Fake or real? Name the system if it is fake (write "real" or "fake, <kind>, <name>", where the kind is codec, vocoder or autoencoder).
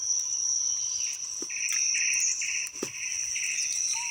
real